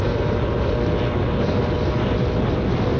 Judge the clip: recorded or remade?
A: recorded